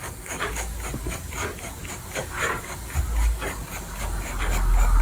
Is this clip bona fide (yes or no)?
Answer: no